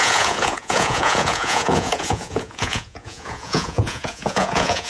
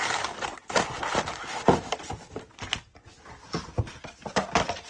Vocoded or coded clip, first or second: first